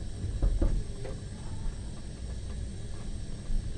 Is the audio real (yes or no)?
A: yes